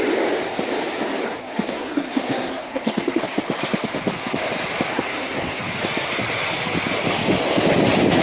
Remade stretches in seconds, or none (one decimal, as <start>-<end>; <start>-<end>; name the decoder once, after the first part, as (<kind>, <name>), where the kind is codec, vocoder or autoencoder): 1.4-3.2 (codec, SNAC); 4.9-5.6